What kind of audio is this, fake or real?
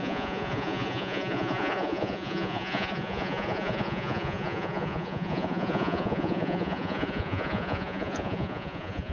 fake